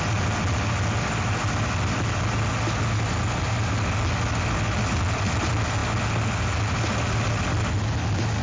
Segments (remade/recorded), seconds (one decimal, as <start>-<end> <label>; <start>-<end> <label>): 0.0-8.4 recorded